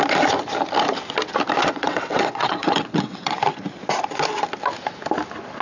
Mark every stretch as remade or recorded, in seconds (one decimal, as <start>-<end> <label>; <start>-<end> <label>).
0.0-1.6 recorded; 1.6-3.4 remade; 3.4-5.6 recorded